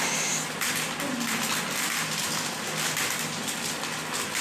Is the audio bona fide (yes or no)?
yes